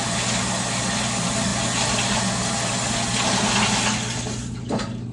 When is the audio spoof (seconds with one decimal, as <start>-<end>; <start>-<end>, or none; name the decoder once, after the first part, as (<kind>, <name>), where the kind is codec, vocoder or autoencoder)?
none